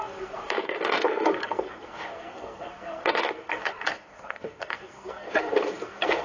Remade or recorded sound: remade